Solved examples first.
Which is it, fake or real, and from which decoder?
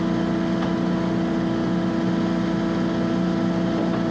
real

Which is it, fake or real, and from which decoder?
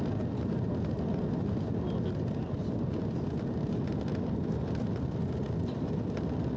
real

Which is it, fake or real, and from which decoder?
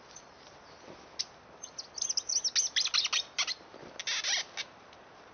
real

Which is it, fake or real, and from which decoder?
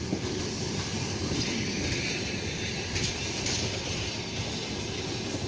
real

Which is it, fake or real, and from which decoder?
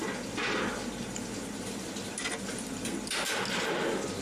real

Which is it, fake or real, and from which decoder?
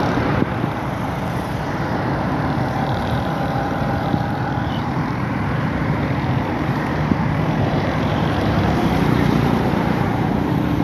fake, vocoder, BigVGAN v2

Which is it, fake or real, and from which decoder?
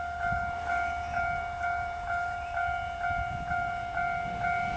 fake, vocoder, BigVGAN v2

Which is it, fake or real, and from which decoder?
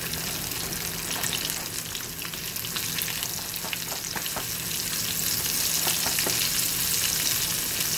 real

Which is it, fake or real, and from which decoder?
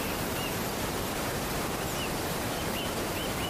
fake, vocoder, BigVGAN v2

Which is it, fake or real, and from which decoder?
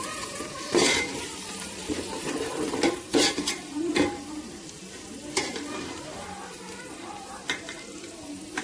fake, vocoder, BigVGAN v2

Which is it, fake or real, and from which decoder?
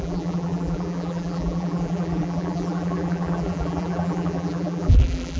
fake, vocoder, BigVGAN v2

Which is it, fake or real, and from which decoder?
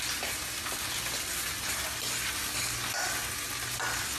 real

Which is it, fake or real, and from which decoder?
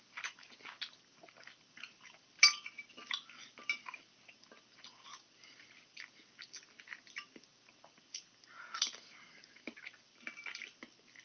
real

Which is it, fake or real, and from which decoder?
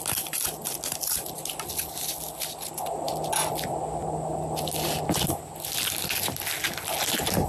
real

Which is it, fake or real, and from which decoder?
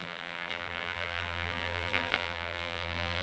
fake, vocoder, BigVGAN v2